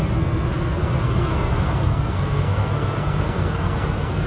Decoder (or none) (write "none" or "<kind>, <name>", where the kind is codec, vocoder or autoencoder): codec, SNAC